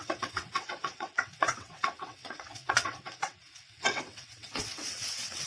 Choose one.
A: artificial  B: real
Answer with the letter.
A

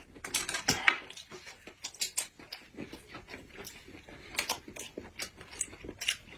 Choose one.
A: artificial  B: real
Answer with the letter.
B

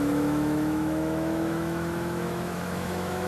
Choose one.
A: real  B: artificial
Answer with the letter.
B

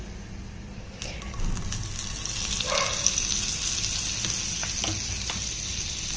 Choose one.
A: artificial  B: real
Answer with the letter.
B